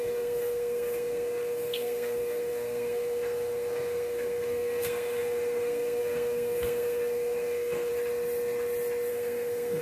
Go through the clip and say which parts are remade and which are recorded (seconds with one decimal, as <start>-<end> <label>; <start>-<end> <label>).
0.0-7.9 remade; 7.9-9.1 recorded; 9.1-9.8 remade